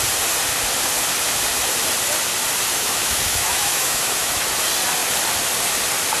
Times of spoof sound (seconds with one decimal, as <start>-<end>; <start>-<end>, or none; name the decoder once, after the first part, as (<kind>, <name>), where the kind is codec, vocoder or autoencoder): 2.7-4.4 (autoencoder, DAC-VAE)